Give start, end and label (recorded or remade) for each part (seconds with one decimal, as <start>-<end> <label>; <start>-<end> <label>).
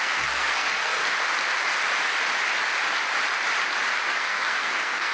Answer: 0.0-1.0 remade; 1.0-4.1 recorded; 4.1-5.1 remade